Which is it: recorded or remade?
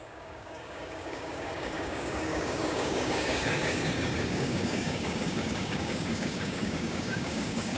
remade